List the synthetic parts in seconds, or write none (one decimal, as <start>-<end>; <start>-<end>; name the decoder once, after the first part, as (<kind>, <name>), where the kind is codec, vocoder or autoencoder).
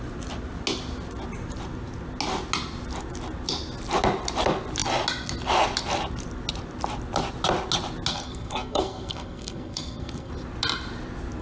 8.1-10.3 (codec, SNAC)